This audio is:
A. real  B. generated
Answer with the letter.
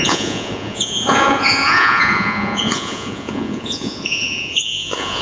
B